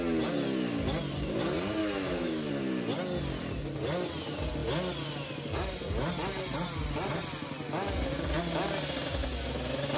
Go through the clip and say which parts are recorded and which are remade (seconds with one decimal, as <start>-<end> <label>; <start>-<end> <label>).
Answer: 0.0-1.8 recorded; 1.8-2.5 remade; 2.5-10.0 recorded